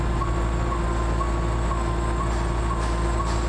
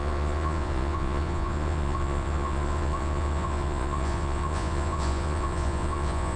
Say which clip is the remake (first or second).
second